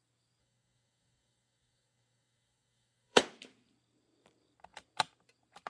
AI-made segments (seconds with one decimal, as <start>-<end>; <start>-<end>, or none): 0.4-3.2